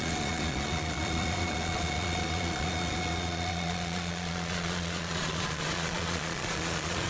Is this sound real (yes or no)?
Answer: no